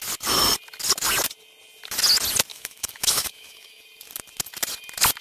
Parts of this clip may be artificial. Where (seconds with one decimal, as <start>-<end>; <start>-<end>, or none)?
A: 2.5-3.8

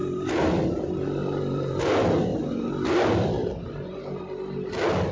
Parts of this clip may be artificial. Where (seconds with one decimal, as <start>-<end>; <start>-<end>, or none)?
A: 0.0-0.6; 1.2-1.8

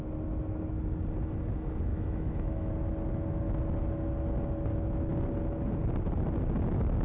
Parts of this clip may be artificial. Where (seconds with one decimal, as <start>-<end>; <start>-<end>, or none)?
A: 1.9-2.7

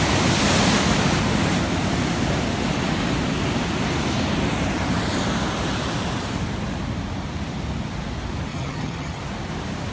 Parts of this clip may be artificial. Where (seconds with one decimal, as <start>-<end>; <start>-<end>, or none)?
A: 8.5-9.2

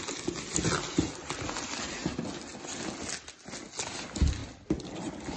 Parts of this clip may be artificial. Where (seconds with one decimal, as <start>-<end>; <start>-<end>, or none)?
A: none

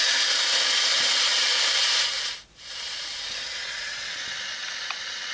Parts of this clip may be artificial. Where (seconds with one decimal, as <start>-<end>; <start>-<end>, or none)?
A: 0.9-4.1

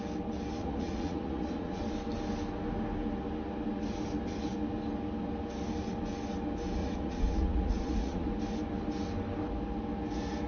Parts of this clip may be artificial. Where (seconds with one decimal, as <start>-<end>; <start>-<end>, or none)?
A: 0.6-1.8; 6.8-8.3

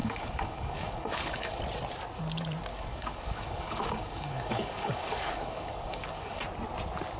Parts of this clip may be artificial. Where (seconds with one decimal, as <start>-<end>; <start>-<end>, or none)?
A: 0.0-1.6; 2.7-6.4